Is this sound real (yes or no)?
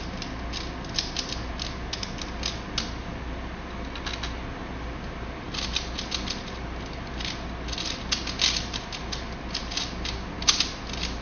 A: yes